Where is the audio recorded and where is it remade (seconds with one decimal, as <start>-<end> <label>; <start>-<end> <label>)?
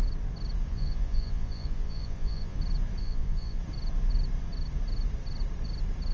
0.0-0.7 recorded; 0.7-2.6 remade; 2.6-3.0 recorded; 3.0-3.6 remade; 3.6-6.1 recorded